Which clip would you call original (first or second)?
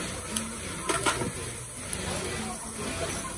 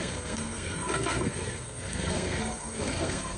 first